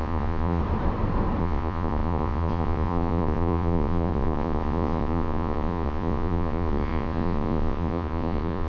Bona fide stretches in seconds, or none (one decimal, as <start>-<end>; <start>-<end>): 0.6-1.4